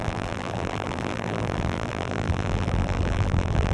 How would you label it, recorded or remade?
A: remade